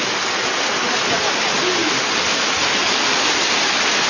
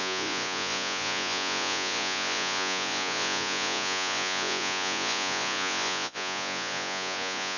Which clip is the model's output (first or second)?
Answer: second